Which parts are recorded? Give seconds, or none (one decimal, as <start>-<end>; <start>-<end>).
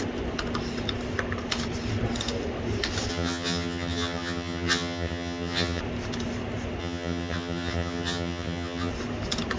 0.0-3.1; 5.8-6.8; 8.9-9.6